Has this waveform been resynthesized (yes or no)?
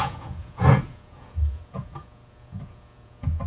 yes